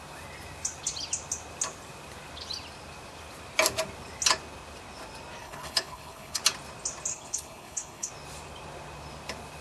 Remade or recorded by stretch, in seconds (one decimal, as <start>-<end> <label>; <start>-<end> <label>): 0.0-5.4 recorded; 5.4-6.4 remade; 6.4-7.1 recorded; 7.1-8.1 remade; 8.1-9.6 recorded